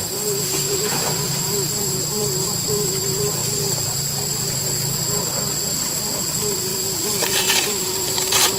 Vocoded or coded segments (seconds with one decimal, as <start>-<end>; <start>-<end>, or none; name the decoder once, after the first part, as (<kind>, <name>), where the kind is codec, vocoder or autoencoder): 0.0-6.7 (vocoder, BigVGAN v2); 7.3-8.6